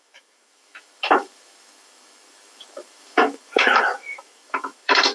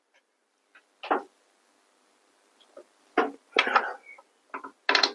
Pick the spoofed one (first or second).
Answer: first